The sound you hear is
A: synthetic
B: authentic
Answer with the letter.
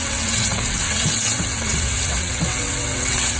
A